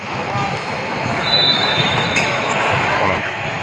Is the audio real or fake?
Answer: fake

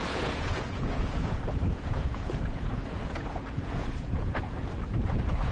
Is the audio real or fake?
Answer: fake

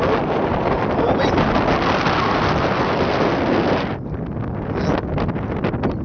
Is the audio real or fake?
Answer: real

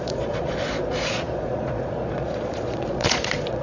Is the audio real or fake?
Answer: fake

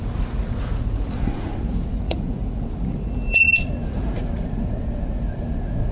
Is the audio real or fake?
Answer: fake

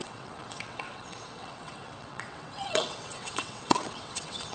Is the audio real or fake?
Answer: fake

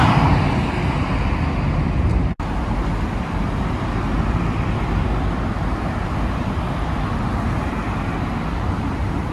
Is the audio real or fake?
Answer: real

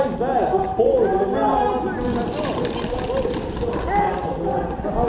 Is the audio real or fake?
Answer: real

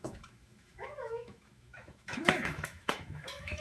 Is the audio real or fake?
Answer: fake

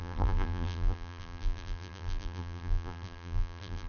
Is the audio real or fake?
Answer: fake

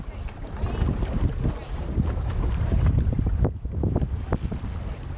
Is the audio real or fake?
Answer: real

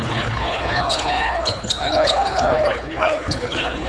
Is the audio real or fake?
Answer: fake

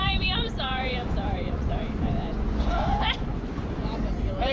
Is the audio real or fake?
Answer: fake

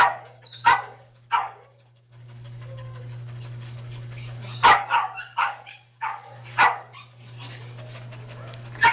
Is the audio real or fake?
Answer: fake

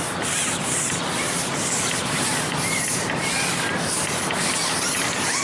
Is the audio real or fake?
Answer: real